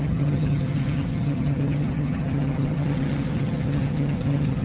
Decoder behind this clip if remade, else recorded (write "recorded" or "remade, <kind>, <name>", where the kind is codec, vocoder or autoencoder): remade, vocoder, HiFi-GAN